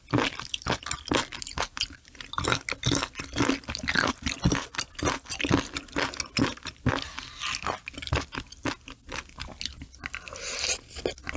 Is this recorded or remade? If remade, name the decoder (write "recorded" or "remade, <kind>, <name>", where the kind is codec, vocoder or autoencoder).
recorded